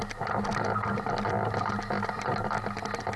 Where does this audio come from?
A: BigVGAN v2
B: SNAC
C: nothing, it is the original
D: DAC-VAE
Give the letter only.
C